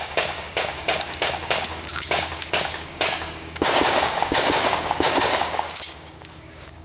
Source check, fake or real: fake